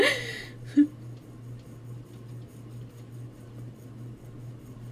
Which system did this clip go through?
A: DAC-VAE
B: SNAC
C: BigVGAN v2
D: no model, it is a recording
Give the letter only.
D